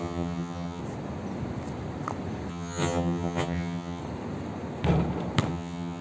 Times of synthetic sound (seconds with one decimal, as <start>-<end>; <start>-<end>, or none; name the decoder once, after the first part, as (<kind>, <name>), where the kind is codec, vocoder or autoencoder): 0.0-0.8 (vocoder, HiFi-GAN); 2.5-4.0; 5.5-6.0